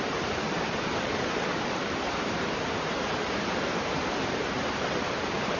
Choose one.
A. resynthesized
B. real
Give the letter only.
A